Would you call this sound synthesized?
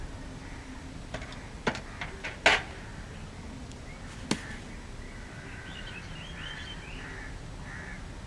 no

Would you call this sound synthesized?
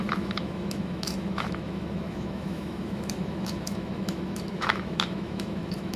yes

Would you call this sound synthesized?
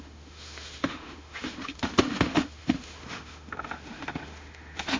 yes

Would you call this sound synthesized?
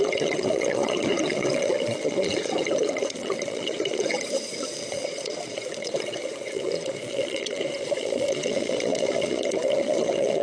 yes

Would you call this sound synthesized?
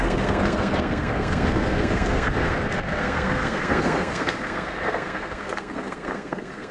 yes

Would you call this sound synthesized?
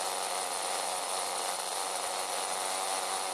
no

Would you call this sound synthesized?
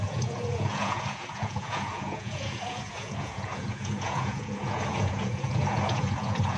yes